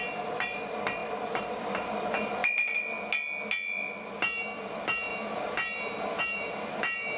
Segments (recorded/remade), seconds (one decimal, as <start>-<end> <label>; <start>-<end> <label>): 0.0-2.4 remade; 2.4-4.4 recorded; 4.4-7.2 remade